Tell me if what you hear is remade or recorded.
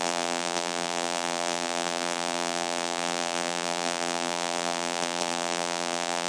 remade